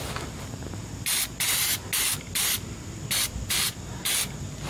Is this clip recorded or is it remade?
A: recorded